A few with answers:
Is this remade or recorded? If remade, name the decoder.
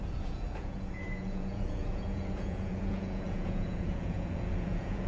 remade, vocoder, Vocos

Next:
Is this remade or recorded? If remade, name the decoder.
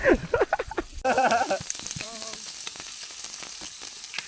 remade, vocoder, BigVGAN v2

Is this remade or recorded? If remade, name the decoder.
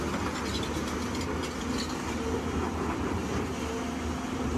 recorded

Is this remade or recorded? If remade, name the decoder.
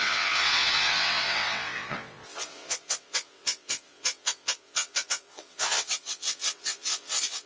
remade, vocoder, WaveNeXt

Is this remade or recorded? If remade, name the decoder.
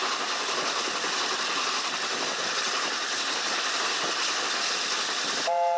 recorded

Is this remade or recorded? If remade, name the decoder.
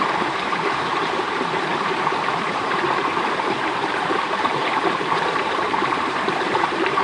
remade, vocoder, BigVGAN v2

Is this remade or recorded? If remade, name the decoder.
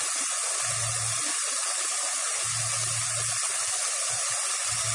recorded